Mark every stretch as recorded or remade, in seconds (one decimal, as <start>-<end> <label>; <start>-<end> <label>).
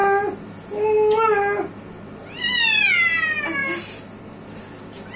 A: 0.0-5.2 recorded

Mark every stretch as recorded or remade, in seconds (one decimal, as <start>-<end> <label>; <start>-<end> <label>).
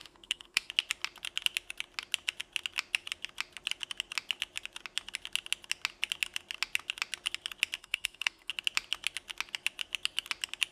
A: 0.0-0.7 remade; 0.7-7.8 recorded; 7.8-8.5 remade; 8.5-10.7 recorded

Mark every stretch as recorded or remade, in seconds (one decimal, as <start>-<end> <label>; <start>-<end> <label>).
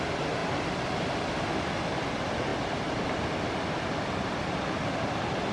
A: 0.0-5.5 recorded